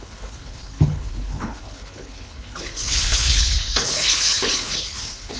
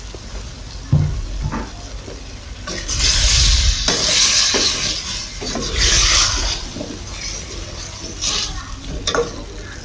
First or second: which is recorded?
second